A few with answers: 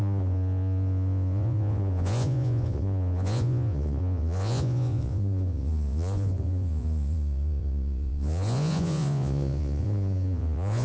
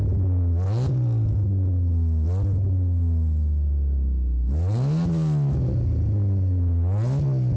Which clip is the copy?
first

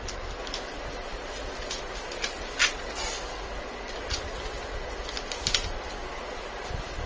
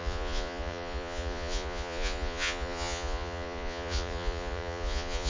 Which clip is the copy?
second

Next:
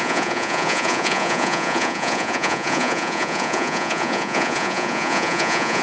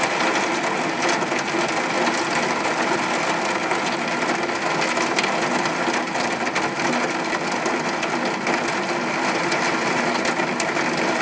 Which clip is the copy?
first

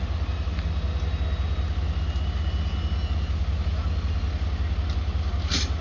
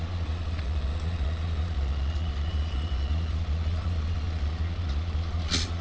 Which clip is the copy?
second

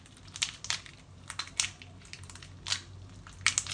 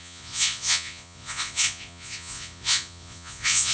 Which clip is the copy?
second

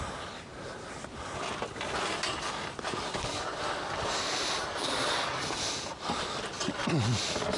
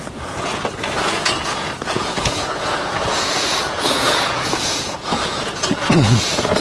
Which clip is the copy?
second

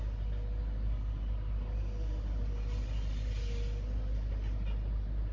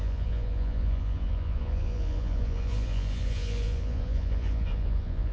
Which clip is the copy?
second